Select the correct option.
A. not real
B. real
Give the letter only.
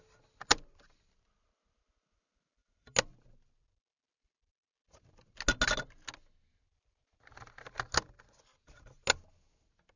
B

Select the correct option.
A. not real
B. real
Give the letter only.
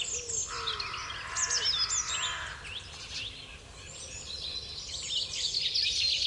B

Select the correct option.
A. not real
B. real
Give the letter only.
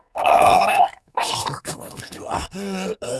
A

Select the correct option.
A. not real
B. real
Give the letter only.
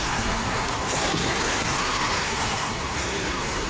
A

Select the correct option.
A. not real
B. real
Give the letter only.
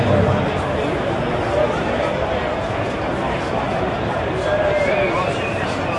B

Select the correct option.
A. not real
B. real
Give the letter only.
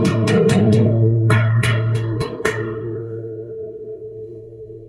A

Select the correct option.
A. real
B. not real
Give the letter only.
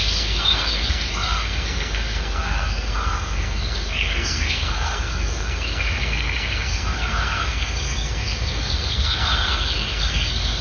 B